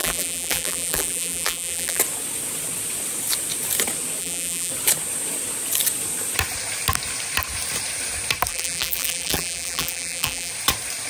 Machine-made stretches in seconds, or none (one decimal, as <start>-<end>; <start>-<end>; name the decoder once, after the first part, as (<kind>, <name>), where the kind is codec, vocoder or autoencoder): 0.0-2.0 (vocoder, BigVGAN v2); 4.2-4.7; 8.5-10.5